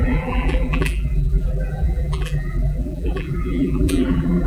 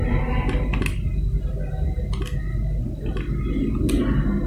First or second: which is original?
second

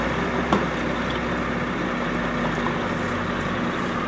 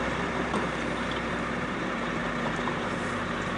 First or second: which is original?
first